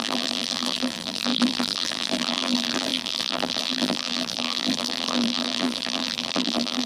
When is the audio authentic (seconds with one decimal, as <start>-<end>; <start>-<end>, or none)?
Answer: none